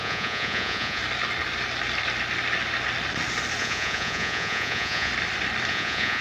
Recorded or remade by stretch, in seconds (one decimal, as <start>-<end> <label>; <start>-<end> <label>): 0.0-1.0 remade; 1.0-3.6 recorded; 3.6-5.1 remade; 5.1-5.7 recorded; 5.7-6.2 remade